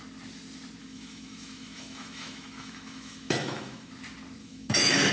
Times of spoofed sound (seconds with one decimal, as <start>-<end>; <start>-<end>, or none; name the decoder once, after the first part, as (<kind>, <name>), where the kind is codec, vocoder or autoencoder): 0.8-3.9 (autoencoder, DAC-VAE); 4.4-5.1